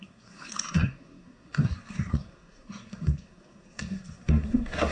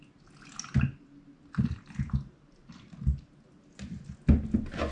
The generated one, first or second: first